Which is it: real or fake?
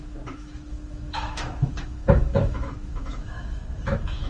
fake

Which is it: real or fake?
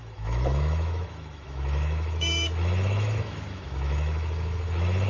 fake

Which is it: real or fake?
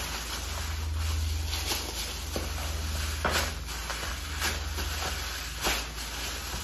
real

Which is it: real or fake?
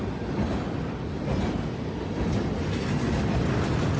real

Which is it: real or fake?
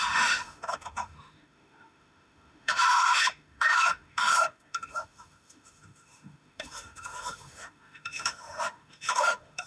fake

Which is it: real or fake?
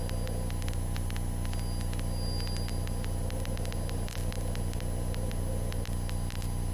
real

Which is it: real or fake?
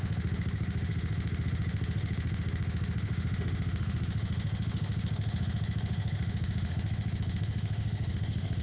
fake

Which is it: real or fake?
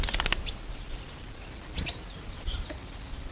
real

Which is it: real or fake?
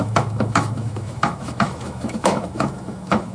fake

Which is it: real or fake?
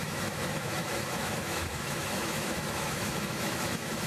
fake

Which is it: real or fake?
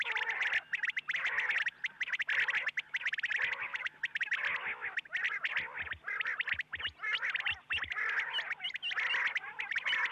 real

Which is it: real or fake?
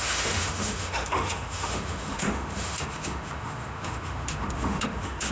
fake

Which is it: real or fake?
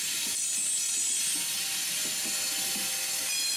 real